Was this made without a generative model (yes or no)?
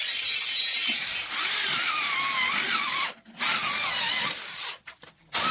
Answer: yes